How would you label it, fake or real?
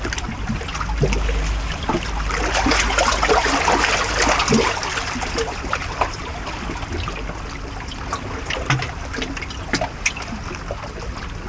real